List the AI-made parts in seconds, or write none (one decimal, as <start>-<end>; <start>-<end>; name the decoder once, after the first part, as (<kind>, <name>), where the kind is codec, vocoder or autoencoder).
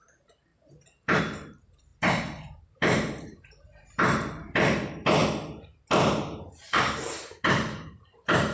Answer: 0.0-5.2 (vocoder, BigVGAN v2); 5.9-8.5